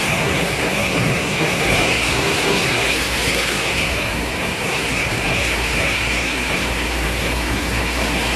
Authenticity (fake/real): fake